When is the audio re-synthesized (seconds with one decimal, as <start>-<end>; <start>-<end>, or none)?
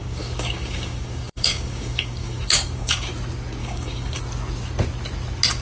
0.0-3.1; 3.6-4.2